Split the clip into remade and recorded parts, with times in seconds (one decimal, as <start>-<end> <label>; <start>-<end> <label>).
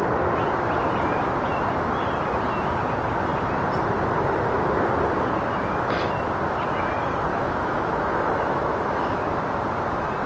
0.0-7.3 recorded; 7.3-9.3 remade; 9.3-10.3 recorded